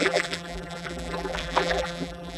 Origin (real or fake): fake